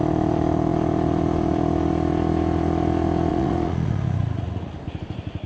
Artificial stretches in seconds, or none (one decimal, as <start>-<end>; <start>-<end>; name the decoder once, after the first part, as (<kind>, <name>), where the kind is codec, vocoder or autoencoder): 3.3-4.7 (vocoder, Vocos)